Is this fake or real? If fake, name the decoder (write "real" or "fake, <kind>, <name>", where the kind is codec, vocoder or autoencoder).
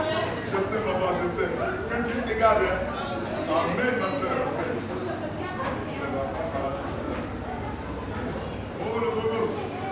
real